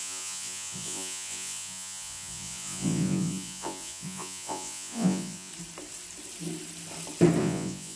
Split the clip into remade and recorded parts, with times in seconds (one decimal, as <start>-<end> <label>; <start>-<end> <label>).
0.0-5.5 remade; 5.5-7.4 recorded; 7.4-8.0 remade

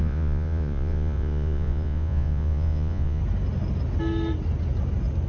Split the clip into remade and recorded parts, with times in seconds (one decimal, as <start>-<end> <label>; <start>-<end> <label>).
0.0-3.2 remade; 3.2-5.3 recorded

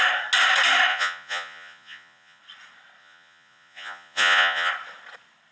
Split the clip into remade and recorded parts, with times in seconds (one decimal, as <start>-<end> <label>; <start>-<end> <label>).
0.0-0.9 recorded; 0.9-2.4 remade; 2.4-3.0 recorded; 3.0-4.7 remade; 4.7-5.5 recorded

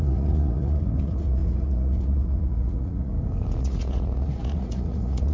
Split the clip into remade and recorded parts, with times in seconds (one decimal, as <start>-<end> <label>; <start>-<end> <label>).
0.0-3.1 remade; 3.1-3.6 recorded; 3.6-5.3 remade

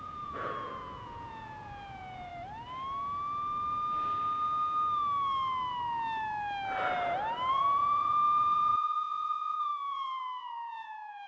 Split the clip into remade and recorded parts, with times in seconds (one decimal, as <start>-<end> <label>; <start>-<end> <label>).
0.0-2.3 remade; 2.3-7.5 recorded; 7.5-11.3 remade

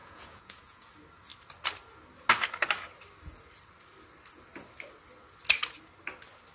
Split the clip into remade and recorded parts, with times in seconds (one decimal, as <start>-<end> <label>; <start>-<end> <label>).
0.0-0.9 remade; 0.9-6.5 recorded

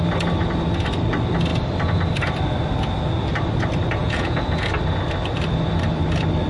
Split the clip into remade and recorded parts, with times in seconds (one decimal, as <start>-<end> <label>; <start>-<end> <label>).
0.0-4.0 recorded; 4.0-4.7 remade; 4.7-6.5 recorded